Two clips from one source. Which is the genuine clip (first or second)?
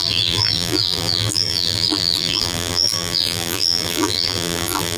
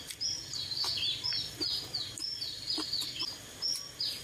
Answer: second